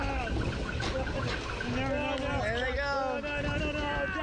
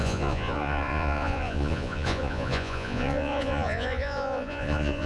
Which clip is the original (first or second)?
first